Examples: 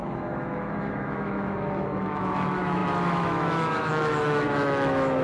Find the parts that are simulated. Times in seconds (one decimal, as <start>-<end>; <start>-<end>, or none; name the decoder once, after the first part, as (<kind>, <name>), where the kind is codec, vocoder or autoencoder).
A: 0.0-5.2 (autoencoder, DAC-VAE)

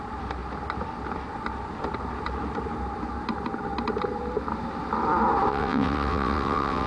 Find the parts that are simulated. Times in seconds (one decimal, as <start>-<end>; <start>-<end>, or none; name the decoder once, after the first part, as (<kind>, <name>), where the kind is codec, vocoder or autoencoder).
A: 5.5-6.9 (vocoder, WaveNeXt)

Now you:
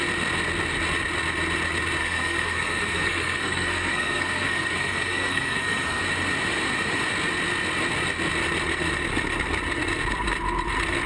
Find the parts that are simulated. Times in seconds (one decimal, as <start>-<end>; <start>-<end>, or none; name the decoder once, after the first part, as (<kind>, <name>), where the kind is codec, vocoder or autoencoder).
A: 2.0-6.0 (codec, SNAC)

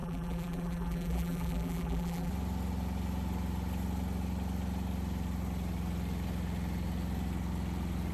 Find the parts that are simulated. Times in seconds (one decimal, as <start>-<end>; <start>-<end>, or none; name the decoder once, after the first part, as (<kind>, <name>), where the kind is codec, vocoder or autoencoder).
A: 0.0-2.3 (vocoder, BigVGAN v2)